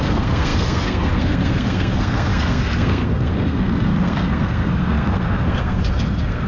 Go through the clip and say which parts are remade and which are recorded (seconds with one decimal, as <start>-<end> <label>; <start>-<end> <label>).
0.0-6.5 remade